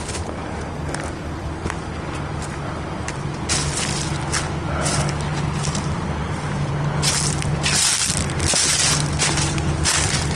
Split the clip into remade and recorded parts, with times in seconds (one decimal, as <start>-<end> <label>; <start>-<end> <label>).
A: 0.0-10.4 recorded